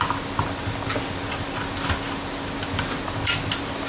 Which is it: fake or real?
real